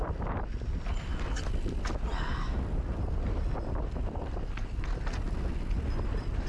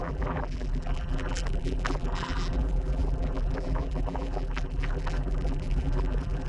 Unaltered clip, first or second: first